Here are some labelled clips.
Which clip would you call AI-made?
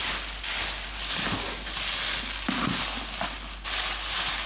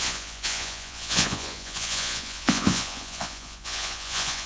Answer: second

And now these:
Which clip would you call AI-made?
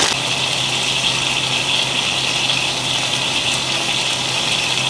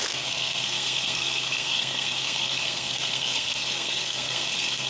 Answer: second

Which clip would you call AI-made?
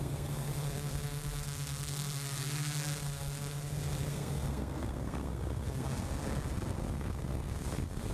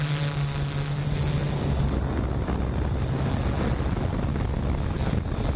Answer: first